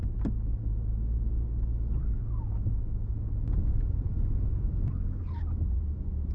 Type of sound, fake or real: fake